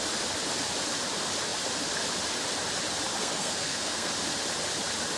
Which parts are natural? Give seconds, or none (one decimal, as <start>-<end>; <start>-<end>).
0.0-3.2; 4.1-5.2